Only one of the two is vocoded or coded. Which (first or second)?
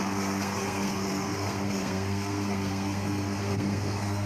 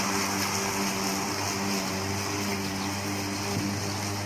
first